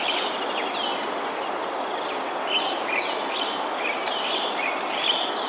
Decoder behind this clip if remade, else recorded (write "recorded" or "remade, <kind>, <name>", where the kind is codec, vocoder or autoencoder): recorded